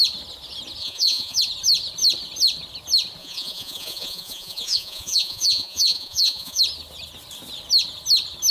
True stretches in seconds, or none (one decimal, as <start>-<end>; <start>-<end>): 0.0-0.8; 1.4-3.2; 6.6-8.5